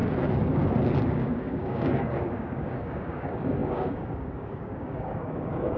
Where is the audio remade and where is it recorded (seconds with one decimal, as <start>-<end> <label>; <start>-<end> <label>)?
0.0-1.1 recorded; 1.1-5.8 remade

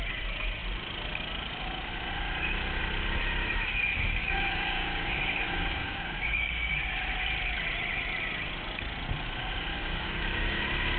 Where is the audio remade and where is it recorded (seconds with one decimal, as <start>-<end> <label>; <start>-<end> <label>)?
0.0-3.9 recorded; 3.9-6.7 remade; 6.7-9.8 recorded; 9.8-10.6 remade; 10.6-11.0 recorded